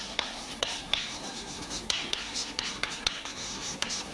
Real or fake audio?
fake